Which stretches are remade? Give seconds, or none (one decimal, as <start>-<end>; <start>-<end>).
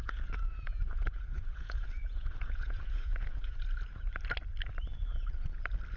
0.0-3.6